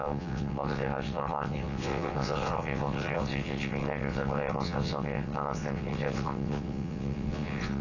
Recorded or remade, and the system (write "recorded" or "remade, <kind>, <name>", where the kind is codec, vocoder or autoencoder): remade, vocoder, WaveNeXt